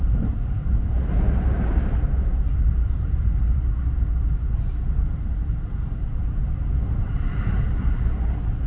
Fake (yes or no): yes